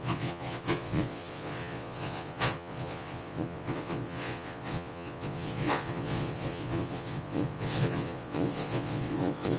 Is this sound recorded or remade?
remade